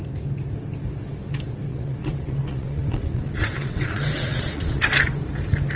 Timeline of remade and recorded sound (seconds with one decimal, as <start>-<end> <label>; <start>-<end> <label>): 0.0-1.7 recorded; 1.7-5.2 remade; 5.2-5.8 recorded